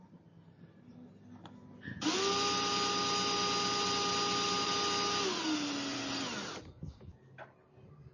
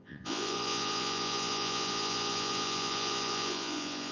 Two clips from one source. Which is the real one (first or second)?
first